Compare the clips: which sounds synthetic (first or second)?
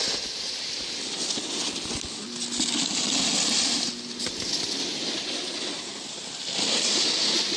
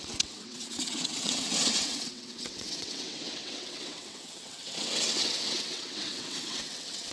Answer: second